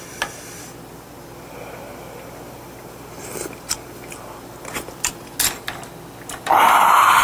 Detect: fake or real real